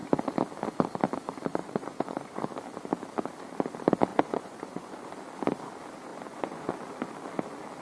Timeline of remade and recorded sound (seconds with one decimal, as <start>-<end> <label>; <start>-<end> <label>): 0.0-1.6 recorded; 1.6-2.4 remade; 2.4-4.1 recorded; 4.1-5.1 remade; 5.1-6.1 recorded; 6.1-6.7 remade; 6.7-7.8 recorded